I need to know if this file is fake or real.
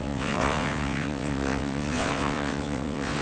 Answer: fake